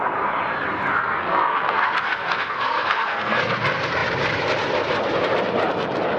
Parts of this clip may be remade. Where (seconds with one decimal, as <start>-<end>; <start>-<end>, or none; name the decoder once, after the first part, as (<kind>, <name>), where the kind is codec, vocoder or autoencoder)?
0.9-3.6 (codec, SNAC)